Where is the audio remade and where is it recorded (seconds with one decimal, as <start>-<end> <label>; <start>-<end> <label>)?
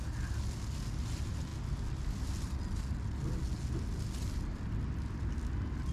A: 0.0-5.9 recorded